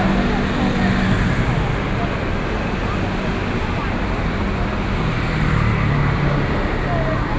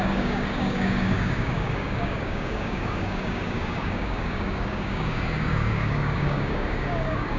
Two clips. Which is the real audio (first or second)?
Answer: first